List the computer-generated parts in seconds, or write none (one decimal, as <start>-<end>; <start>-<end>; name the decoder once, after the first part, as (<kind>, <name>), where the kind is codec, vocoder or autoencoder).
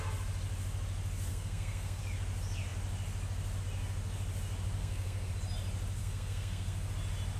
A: 1.3-2.0 (codec, SNAC); 4.8-5.3; 6.0-6.9